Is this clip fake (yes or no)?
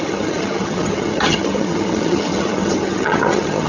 yes